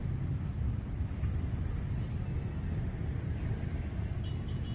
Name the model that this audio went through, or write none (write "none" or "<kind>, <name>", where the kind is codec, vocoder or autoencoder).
none